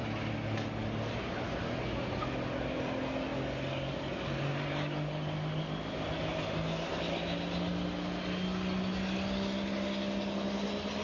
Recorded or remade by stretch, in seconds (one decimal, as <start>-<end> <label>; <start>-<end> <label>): 0.0-11.0 recorded